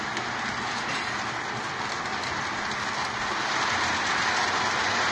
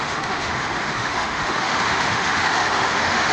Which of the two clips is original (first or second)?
first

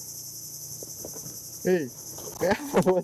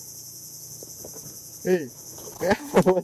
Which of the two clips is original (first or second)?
first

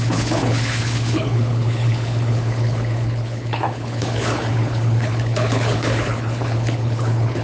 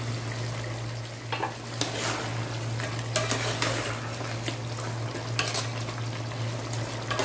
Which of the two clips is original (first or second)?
second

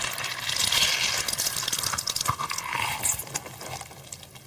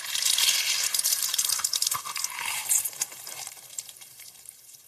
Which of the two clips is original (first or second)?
first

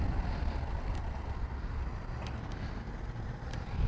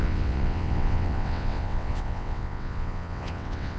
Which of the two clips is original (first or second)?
first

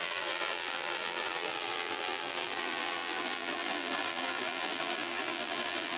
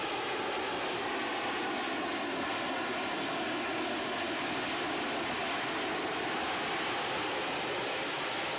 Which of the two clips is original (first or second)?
second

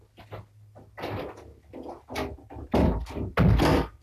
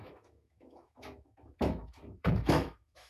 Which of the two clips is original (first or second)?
first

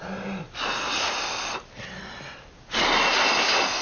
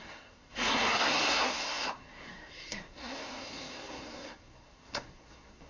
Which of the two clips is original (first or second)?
first